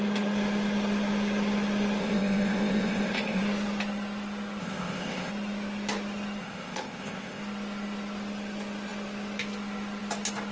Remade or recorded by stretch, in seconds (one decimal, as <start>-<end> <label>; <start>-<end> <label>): 0.0-2.0 recorded; 2.0-3.4 remade; 3.4-4.6 recorded; 4.6-5.3 remade; 5.3-6.4 recorded; 6.4-7.4 remade; 7.4-10.5 recorded